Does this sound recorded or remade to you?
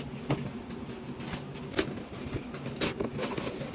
recorded